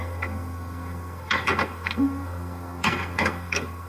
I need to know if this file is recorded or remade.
remade